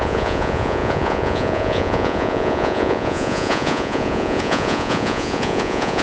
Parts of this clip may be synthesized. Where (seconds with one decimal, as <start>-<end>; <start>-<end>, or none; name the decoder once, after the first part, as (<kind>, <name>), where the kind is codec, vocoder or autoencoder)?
0.0-6.0 (vocoder, Vocos)